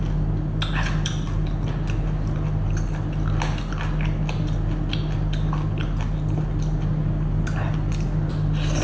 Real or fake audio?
real